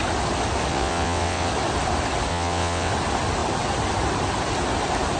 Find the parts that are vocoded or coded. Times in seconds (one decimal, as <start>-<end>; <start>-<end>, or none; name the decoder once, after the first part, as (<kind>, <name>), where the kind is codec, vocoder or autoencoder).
0.7-1.5 (vocoder, WaveNeXt); 2.3-2.9